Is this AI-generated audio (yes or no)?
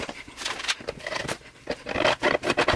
yes